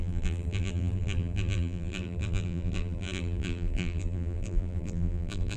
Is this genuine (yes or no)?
no